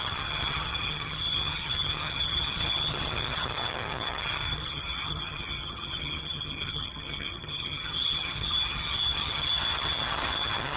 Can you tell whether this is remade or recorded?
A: remade